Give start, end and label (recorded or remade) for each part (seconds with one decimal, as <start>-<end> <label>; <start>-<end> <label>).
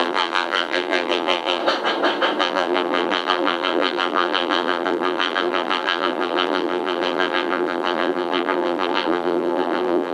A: 0.0-1.6 remade; 1.6-2.4 recorded; 2.4-10.1 remade